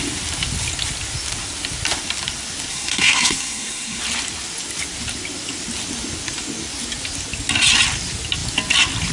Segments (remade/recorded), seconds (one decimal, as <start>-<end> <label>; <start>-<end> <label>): 0.0-2.7 recorded; 2.7-4.0 remade; 4.0-9.1 recorded